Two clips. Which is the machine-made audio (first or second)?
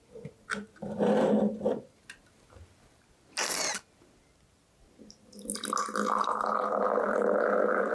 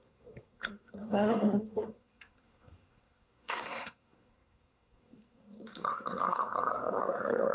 second